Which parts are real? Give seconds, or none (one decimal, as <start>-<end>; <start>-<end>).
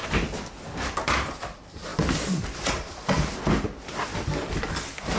0.0-5.2